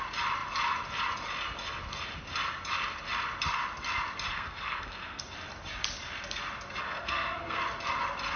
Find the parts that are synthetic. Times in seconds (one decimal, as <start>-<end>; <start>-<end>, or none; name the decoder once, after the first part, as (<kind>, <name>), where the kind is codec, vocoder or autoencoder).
4.3-5.2 (codec, SNAC); 6.8-7.6